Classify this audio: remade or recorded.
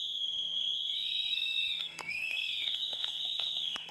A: remade